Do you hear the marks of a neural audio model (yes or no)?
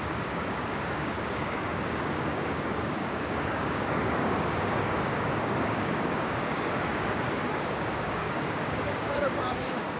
yes